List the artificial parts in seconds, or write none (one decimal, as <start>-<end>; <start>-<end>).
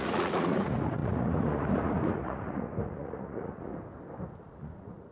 0.0-3.7; 4.4-5.1